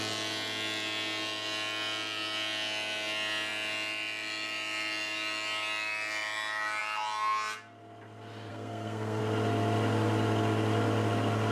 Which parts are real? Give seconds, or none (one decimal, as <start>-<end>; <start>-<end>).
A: 0.0-8.5; 9.2-11.5